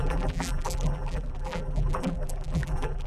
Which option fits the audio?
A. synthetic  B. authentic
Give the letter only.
A